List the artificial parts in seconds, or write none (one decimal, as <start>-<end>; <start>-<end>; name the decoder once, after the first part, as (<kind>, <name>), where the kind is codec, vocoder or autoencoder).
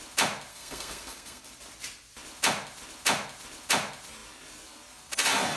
0.5-1.5 (codec, SNAC)